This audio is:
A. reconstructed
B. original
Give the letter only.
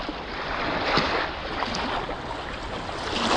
B